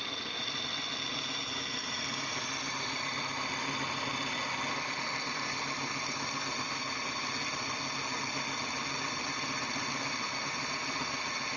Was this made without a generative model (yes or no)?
yes